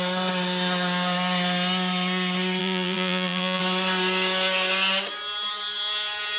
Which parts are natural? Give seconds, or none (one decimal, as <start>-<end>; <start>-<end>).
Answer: 0.0-2.6; 3.6-6.4